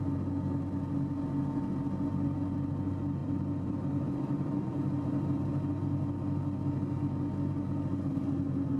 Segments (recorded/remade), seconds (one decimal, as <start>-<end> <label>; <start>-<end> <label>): 0.0-3.2 recorded; 3.2-5.5 remade; 5.5-8.8 recorded